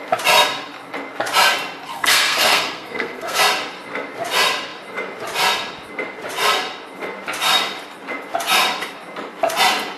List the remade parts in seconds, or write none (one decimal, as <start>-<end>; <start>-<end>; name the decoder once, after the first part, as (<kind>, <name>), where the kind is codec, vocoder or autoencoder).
1.9-3.4 (codec, SNAC)